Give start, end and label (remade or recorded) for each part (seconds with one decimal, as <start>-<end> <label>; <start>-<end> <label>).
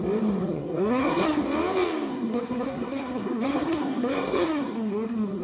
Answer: 0.0-0.4 recorded; 0.4-1.4 remade; 1.4-2.1 recorded; 2.1-5.4 remade